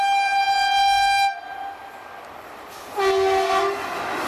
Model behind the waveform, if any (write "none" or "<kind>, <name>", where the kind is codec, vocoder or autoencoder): none